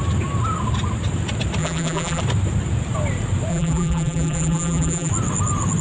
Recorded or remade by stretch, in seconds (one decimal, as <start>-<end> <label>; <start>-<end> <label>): 0.0-1.6 recorded; 1.6-2.2 remade; 2.2-3.5 recorded; 3.5-5.1 remade; 5.1-5.8 recorded